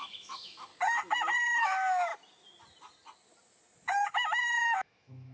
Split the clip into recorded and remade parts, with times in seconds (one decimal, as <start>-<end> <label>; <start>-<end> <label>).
0.0-0.7 remade; 0.7-1.6 recorded; 1.6-2.1 remade; 2.1-4.1 recorded; 4.1-5.3 remade